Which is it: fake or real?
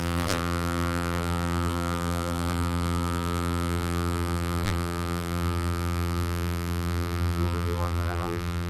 fake